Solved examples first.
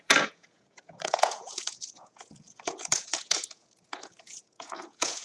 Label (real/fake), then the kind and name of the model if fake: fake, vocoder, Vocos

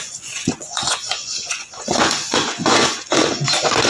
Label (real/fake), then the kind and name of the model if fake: fake, vocoder, Vocos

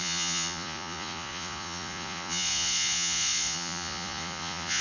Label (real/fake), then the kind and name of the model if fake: fake, vocoder, Vocos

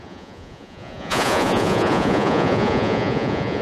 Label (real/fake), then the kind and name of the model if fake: fake, vocoder, Vocos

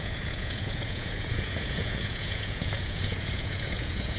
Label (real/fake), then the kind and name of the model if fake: fake, vocoder, Vocos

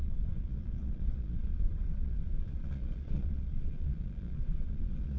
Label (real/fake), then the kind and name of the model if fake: fake, vocoder, Vocos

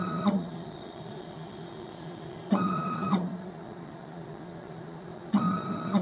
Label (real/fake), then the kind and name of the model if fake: fake, vocoder, Vocos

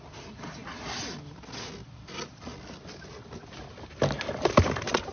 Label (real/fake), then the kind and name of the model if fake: real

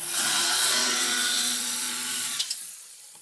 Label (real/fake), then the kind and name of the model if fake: fake, vocoder, Vocos